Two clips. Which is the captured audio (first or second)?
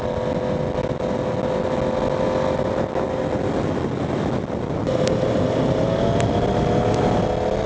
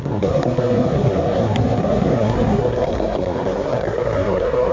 first